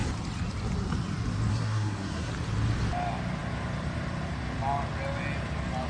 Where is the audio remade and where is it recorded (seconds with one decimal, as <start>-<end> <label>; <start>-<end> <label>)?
0.0-1.5 recorded; 1.5-2.3 remade; 2.3-5.9 recorded